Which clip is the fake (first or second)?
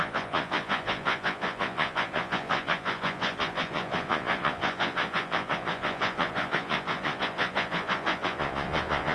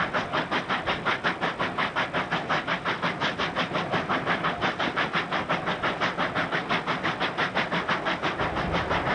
first